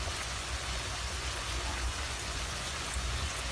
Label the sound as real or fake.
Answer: fake